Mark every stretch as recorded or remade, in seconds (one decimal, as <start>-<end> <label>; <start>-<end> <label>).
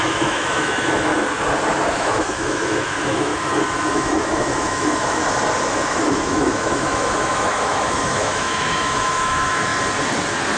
0.0-1.1 remade; 1.1-1.9 recorded; 1.9-3.3 remade; 3.3-3.9 recorded; 3.9-5.2 remade; 5.2-5.7 recorded; 5.7-9.7 remade; 9.7-10.6 recorded